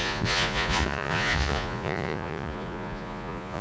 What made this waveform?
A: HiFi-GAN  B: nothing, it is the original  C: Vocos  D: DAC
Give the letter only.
C